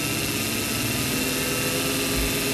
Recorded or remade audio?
recorded